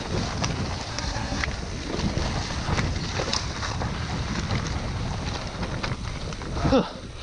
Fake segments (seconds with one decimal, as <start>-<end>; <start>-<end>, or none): 0.9-1.4